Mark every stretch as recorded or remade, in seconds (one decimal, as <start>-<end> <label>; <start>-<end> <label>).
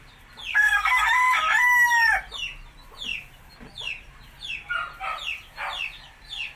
0.0-0.5 recorded; 0.5-1.1 remade; 1.1-6.6 recorded